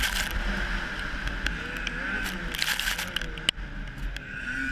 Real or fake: real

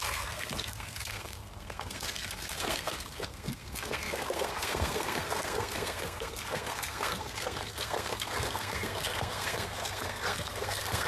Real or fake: fake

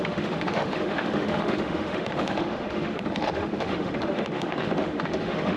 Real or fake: fake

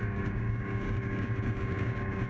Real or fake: fake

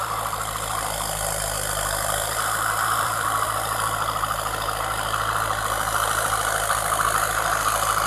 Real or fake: fake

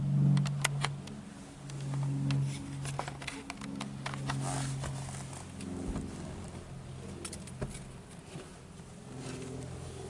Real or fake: real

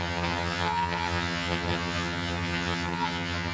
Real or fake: fake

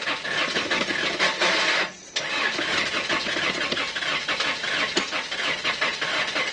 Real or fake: real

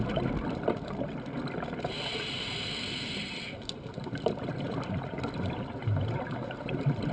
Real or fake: real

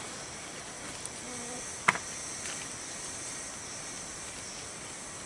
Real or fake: real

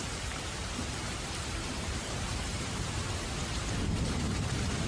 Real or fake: fake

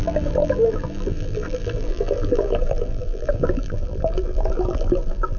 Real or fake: fake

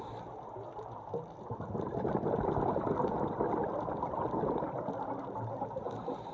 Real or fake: real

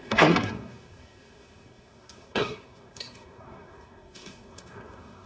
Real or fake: fake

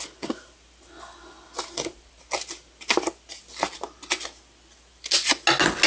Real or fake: real